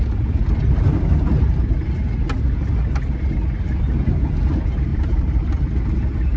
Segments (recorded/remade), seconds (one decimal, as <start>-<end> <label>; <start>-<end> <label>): 0.0-4.9 recorded; 4.9-5.6 remade; 5.6-6.4 recorded